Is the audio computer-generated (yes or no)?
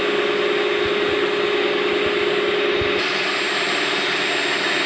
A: no